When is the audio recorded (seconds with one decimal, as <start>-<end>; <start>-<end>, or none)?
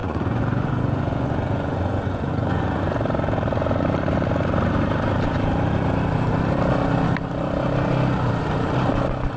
2.8-9.4